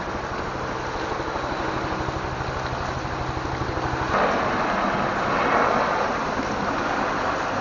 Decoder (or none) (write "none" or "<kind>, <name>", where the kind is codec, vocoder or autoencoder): none